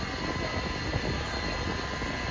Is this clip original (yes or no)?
yes